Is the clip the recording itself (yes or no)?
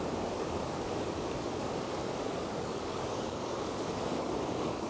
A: no